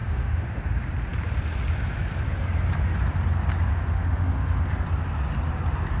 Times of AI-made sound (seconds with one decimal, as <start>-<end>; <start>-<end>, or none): 0.0-0.6; 3.7-4.7